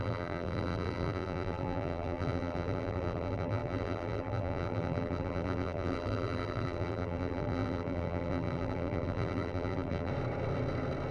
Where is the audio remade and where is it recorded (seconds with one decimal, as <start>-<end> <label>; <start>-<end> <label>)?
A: 0.0-10.1 remade; 10.1-11.1 recorded